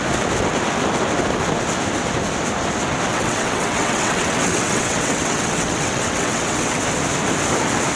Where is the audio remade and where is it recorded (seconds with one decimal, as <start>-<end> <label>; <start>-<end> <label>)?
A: 0.0-3.1 recorded; 3.1-6.8 remade; 6.8-8.0 recorded